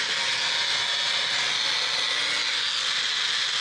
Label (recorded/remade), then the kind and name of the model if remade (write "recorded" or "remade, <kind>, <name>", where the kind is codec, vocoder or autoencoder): recorded